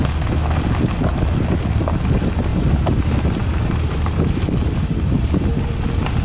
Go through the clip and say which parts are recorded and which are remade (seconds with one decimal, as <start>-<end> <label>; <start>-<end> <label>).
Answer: 0.0-2.5 recorded; 2.5-5.3 remade; 5.3-6.2 recorded